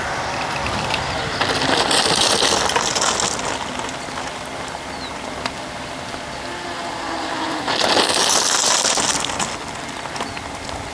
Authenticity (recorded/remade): recorded